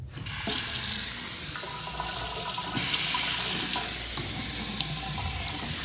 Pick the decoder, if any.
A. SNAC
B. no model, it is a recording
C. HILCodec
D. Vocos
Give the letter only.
B